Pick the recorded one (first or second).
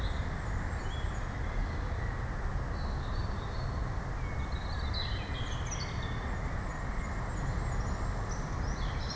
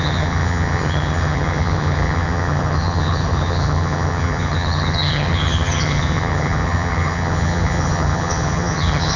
first